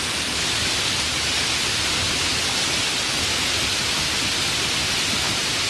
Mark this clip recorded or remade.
recorded